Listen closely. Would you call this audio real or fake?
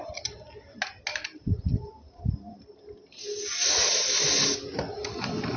real